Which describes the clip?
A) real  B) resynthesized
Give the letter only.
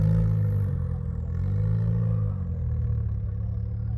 A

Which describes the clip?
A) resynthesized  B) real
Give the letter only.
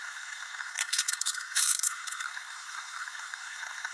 A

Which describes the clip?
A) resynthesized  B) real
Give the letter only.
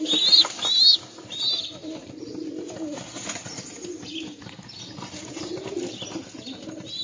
B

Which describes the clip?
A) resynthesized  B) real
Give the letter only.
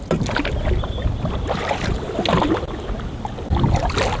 B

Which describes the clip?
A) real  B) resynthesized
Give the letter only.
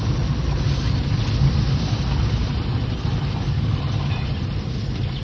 A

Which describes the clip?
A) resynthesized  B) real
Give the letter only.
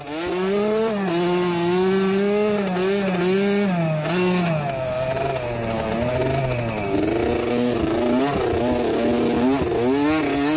B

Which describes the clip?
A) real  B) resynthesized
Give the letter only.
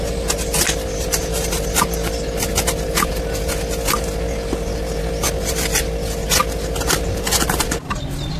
A